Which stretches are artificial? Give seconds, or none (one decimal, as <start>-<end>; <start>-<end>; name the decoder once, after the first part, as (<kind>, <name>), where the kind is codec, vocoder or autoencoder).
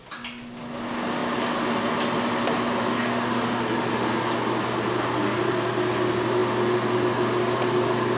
none